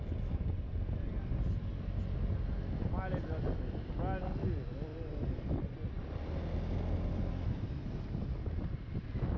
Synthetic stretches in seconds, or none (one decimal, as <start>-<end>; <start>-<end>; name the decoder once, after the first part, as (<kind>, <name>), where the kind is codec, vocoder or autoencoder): none